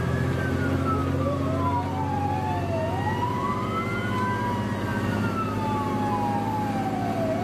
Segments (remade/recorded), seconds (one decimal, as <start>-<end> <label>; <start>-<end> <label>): 0.0-4.9 recorded; 4.9-5.9 remade; 5.9-7.4 recorded